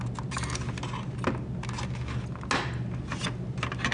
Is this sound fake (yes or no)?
no